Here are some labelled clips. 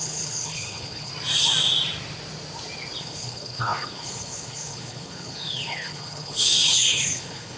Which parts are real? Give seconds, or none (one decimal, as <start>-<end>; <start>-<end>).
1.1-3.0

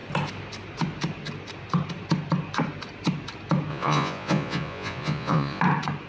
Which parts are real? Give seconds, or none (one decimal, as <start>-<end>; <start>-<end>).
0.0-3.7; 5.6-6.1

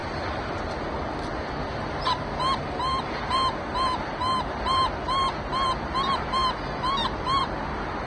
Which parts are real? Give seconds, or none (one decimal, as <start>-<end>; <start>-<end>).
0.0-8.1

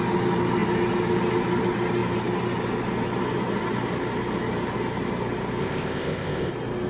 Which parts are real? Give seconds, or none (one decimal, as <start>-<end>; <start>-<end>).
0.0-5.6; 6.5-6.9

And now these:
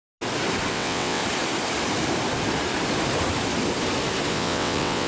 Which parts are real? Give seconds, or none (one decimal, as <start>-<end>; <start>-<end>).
0.0-0.7; 1.2-4.3

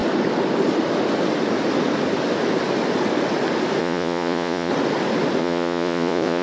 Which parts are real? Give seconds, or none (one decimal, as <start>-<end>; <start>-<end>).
0.0-3.8; 4.7-5.4

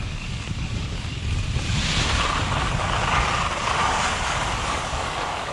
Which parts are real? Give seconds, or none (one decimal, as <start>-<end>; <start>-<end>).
1.2-3.7